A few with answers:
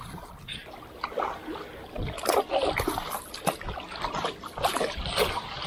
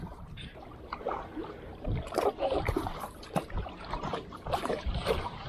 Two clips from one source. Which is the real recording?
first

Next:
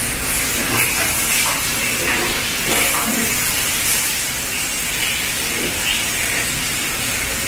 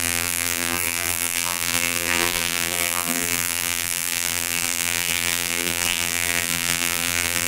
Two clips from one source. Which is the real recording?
first